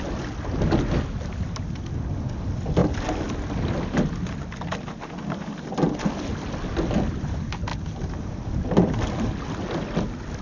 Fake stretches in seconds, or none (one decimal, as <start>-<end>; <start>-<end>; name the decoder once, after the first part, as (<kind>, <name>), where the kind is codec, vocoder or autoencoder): none